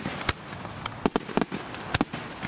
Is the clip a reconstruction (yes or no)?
no